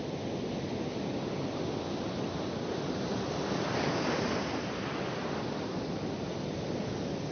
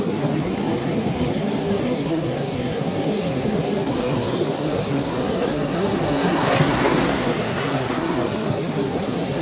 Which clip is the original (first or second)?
first